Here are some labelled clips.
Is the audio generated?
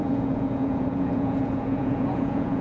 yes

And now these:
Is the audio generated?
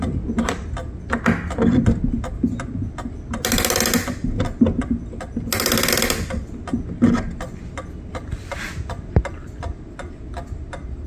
no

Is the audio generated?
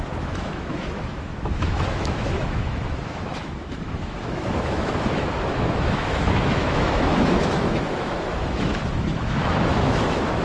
yes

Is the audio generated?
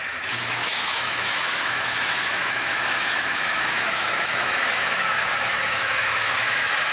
yes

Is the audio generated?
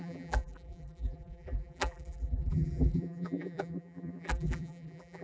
yes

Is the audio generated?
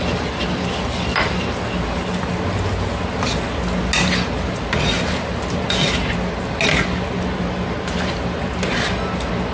no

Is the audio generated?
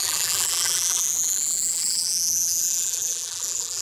yes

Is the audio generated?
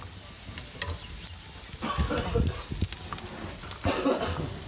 no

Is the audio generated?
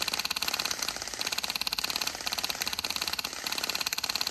no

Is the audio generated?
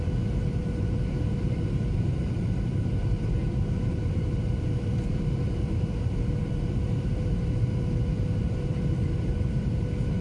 yes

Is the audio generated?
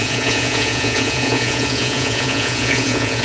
yes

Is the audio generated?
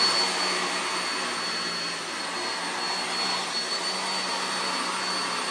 no